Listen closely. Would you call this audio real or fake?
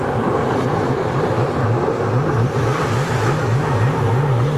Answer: real